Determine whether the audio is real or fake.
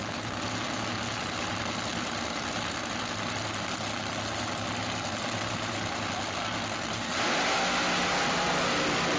real